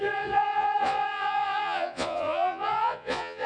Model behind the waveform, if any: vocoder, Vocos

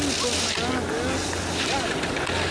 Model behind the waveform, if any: none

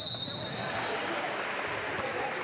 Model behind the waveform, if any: none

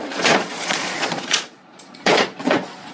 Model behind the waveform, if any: vocoder, Vocos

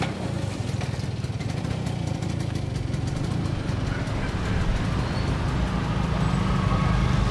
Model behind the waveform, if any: none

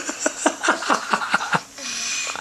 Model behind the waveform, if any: none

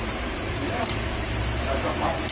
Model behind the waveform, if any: vocoder, BigVGAN v2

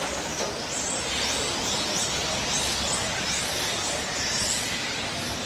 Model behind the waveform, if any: none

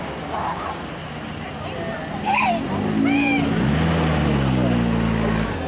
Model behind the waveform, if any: none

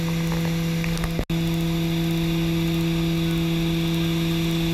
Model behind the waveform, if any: none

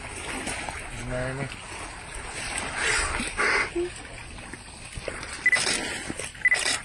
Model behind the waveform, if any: none